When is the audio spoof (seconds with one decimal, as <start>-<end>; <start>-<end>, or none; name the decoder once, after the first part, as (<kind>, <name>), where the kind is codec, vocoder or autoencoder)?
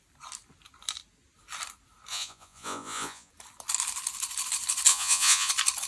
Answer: 2.1-3.3 (vocoder, Vocos); 4.9-5.5